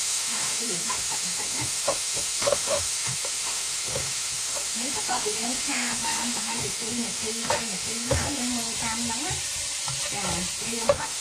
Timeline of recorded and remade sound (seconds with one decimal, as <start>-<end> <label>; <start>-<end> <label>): 0.0-8.5 remade; 8.5-10.6 recorded; 10.6-11.2 remade